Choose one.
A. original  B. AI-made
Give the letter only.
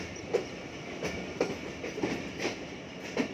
A